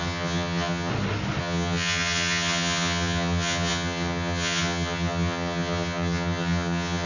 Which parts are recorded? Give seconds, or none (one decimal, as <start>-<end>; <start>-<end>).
0.9-1.4